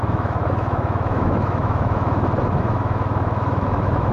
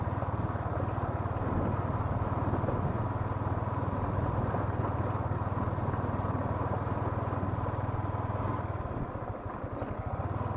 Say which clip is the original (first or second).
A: second